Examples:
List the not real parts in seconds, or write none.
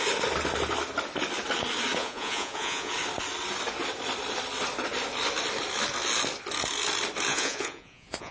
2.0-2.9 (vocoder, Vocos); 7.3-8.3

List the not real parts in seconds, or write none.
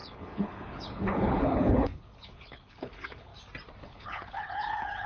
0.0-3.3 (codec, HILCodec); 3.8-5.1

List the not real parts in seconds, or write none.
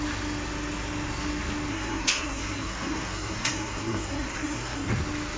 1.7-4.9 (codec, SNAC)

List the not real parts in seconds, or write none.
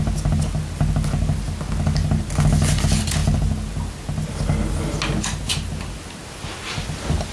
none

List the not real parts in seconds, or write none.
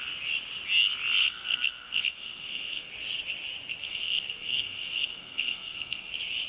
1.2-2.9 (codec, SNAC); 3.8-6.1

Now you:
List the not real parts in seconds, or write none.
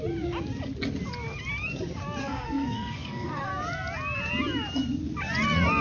2.2-3.5 (codec, SNAC)